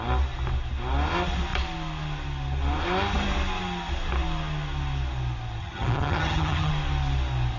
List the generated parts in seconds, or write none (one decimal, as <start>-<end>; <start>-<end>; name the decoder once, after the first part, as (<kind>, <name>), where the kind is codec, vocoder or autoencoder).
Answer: 5.6-6.7 (vocoder, HiFi-GAN)